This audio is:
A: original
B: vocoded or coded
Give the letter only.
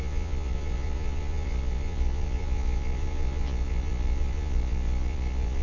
B